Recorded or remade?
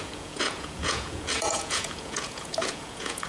remade